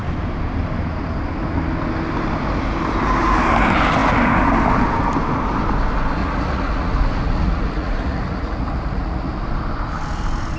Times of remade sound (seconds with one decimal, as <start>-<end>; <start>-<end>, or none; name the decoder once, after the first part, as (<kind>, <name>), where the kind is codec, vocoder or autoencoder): 6.2-9.4 (vocoder, Vocos)